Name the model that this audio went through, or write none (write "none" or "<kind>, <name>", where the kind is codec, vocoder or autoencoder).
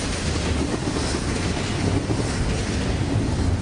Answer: none